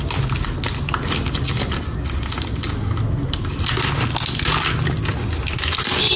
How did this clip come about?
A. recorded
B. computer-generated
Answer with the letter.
A